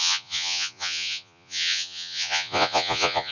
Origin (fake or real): fake